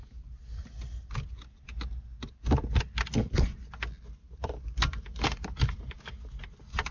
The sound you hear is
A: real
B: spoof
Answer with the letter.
A